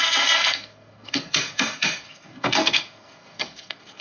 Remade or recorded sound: remade